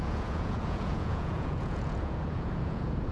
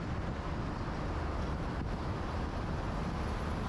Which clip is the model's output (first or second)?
first